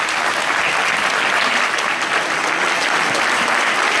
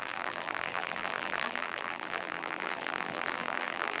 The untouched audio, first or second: first